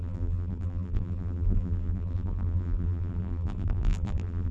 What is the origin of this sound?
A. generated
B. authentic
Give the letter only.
A